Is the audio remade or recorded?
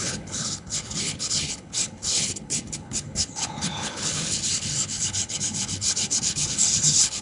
remade